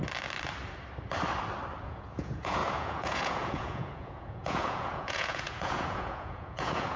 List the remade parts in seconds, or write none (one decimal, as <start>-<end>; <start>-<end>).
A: 1.8-7.0